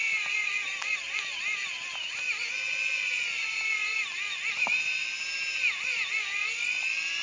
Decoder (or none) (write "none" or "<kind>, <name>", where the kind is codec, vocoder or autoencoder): none